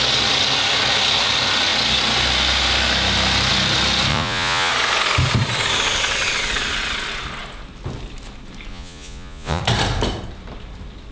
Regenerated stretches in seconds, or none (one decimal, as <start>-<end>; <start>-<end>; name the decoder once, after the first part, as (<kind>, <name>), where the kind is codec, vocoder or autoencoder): 4.1-4.7 (vocoder, Vocos); 8.7-9.6